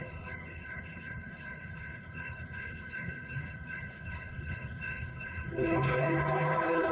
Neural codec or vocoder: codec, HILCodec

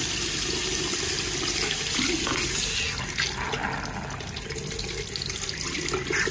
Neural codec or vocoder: none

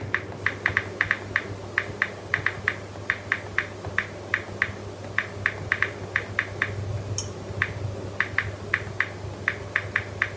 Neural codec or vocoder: none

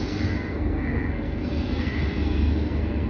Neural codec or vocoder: codec, SNAC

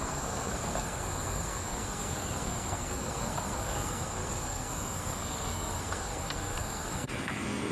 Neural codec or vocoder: codec, SNAC